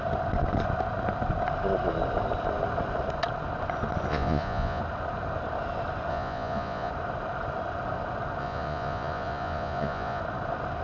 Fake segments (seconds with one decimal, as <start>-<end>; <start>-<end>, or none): 4.1-4.8; 6.1-6.9; 8.4-10.2